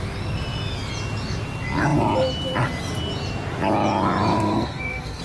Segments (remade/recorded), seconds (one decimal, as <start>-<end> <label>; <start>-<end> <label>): 0.0-4.3 recorded; 4.3-5.2 remade